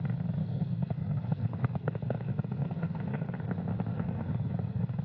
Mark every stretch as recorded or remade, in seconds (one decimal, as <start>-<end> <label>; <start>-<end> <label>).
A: 0.0-0.4 recorded; 0.4-3.4 remade; 3.4-3.9 recorded; 3.9-5.0 remade